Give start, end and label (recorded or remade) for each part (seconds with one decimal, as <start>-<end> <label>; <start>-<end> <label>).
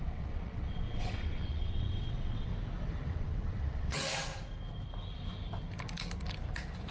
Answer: 0.0-2.5 remade; 2.5-3.1 recorded; 3.1-4.3 remade; 4.3-6.9 recorded